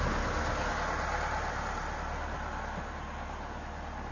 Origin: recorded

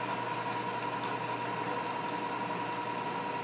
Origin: recorded